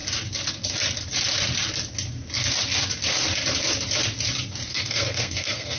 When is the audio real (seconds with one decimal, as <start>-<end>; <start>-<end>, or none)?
0.0-4.7